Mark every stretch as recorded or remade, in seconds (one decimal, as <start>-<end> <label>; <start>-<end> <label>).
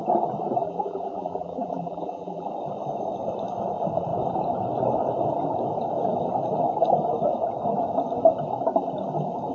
0.0-0.6 recorded; 0.6-2.5 remade; 2.5-9.5 recorded